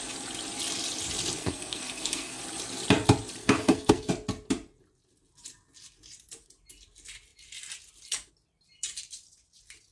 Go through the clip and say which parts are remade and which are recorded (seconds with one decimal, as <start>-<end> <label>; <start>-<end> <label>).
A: 0.0-1.4 recorded; 1.4-2.4 remade; 2.4-3.4 recorded; 3.4-4.1 remade; 4.1-9.9 recorded